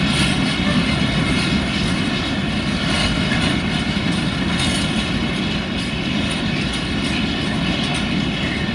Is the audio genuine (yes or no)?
yes